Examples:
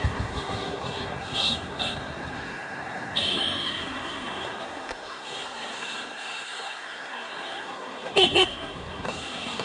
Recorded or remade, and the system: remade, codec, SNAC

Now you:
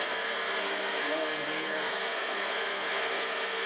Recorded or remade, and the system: remade, codec, SNAC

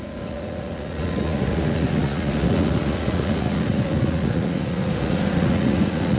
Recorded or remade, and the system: remade, vocoder, Vocos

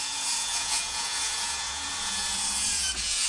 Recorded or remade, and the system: remade, vocoder, Vocos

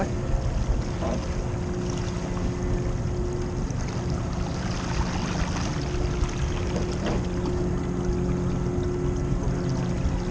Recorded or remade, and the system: recorded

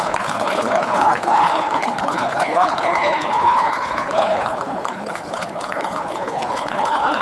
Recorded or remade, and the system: remade, codec, HILCodec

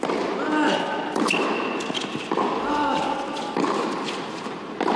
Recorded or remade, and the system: recorded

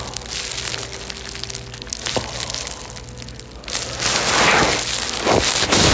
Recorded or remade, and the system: recorded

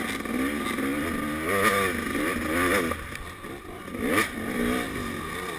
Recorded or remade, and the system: recorded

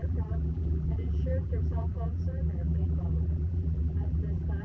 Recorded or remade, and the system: remade, vocoder, BigVGAN v2